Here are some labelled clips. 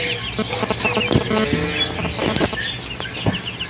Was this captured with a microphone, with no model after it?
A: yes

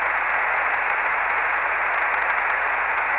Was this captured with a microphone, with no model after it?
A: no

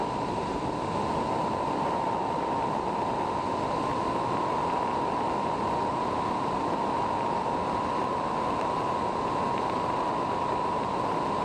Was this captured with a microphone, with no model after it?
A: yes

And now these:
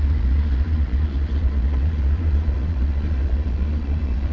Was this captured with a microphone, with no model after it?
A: no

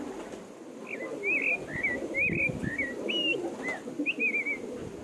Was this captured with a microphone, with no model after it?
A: yes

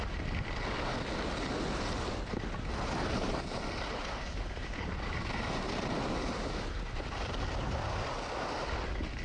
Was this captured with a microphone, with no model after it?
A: yes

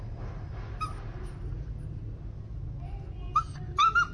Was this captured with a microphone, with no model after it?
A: yes